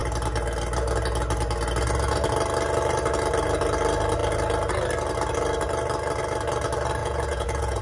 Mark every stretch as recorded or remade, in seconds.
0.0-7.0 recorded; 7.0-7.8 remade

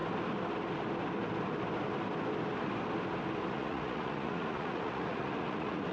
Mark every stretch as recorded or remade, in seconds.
0.0-3.5 recorded; 3.5-5.9 remade

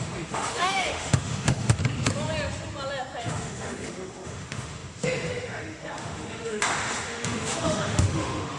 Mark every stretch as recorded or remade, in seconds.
0.0-1.8 remade; 1.8-3.2 recorded; 3.2-8.6 remade